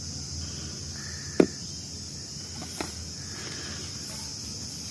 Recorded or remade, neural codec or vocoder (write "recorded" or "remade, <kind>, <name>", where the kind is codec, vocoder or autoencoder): recorded